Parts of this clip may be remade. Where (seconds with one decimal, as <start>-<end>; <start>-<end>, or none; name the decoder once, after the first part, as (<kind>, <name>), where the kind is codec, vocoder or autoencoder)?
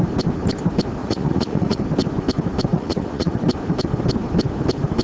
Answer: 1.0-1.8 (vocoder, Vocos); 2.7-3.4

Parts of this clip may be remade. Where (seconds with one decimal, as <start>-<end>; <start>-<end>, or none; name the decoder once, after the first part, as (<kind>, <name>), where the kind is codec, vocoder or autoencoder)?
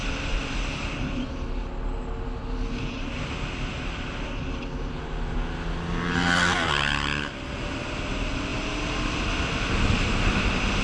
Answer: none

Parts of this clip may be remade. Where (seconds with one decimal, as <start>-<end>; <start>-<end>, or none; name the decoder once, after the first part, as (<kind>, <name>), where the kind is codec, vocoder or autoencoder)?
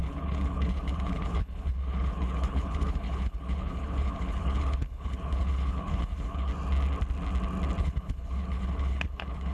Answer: 0.0-6.5 (codec, HILCodec); 7.8-9.5